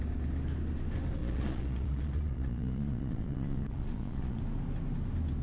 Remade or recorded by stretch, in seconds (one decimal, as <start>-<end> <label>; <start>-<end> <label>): 0.0-1.2 recorded; 1.2-4.4 remade; 4.4-5.4 recorded